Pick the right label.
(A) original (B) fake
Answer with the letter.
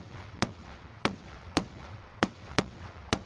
B